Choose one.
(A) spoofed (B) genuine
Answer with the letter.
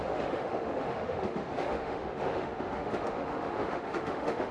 A